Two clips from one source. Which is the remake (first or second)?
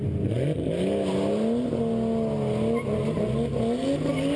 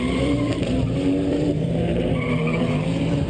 second